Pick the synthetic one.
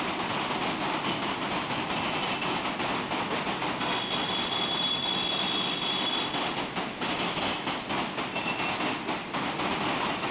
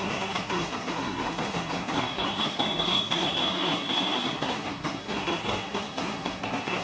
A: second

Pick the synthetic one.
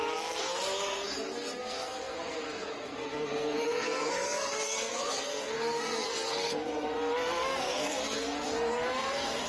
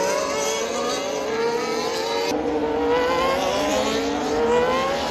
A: first